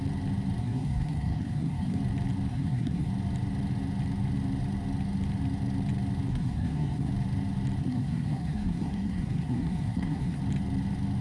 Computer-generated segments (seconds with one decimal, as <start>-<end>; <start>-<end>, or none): 0.6-2.0; 2.5-3.1; 6.3-7.1; 7.8-10.4